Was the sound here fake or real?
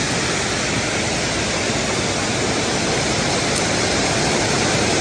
real